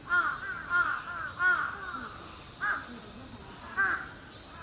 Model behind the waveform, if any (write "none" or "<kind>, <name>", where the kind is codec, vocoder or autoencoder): none